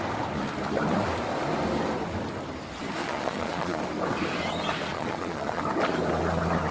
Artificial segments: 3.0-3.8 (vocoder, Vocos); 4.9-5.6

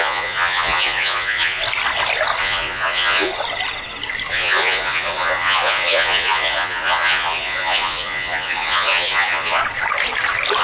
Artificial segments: 0.0-1.6 (vocoder, Vocos); 2.4-3.3; 4.3-9.6